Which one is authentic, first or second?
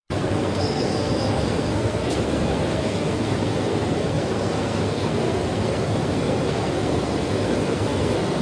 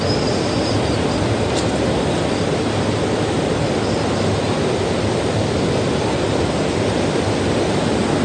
second